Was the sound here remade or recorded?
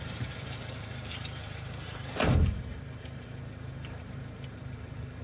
remade